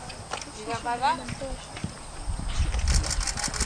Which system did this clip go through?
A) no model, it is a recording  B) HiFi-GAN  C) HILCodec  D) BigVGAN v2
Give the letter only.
A